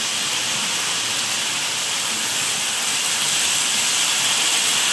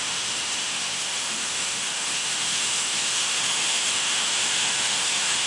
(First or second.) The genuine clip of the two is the first